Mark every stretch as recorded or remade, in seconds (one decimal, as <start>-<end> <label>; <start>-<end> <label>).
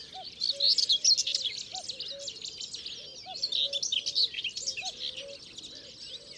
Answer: 0.0-6.4 recorded